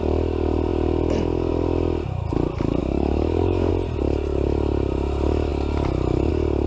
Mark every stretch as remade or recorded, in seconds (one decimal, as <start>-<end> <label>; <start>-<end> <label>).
0.0-2.8 recorded; 2.8-3.7 remade; 3.7-6.7 recorded

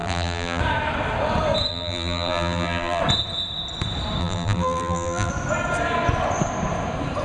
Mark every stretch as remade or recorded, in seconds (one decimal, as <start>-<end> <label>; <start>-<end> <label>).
0.0-0.6 remade; 0.6-1.7 recorded; 1.7-3.0 remade; 3.0-4.2 recorded; 4.2-5.3 remade; 5.3-7.2 recorded

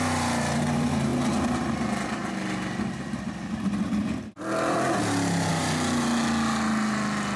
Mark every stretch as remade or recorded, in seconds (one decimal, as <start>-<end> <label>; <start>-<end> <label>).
0.0-7.4 recorded

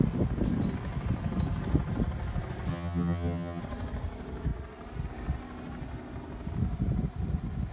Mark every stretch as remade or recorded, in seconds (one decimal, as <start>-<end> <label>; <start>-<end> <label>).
0.0-2.7 recorded; 2.7-3.6 remade; 3.6-7.7 recorded

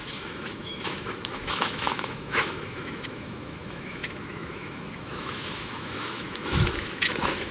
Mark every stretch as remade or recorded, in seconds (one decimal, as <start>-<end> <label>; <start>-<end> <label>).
0.0-7.5 remade